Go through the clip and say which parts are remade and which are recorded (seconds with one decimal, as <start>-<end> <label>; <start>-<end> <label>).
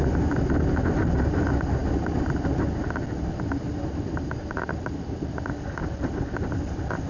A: 0.0-7.1 recorded